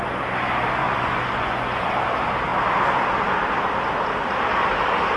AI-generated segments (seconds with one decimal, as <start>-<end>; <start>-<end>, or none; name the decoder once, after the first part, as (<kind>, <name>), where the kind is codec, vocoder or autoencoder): 0.8-1.9 (vocoder, Vocos)